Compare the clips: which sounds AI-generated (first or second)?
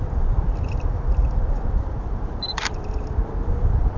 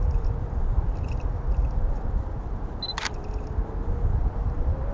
first